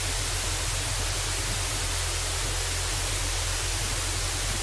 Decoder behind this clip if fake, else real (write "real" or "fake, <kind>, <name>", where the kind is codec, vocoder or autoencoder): real